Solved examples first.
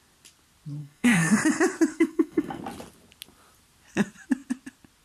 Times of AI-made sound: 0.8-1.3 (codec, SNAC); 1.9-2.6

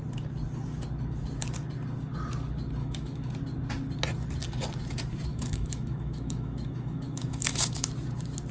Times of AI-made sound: 2.8-3.3 (autoencoder, DAC-VAE); 5.3-7.9